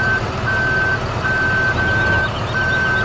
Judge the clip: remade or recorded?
recorded